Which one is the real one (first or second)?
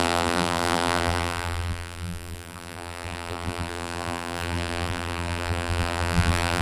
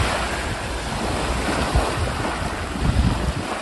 second